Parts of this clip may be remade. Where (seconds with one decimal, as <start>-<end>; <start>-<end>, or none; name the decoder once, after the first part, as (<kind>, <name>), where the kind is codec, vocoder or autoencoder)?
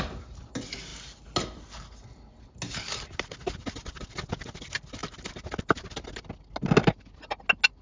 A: none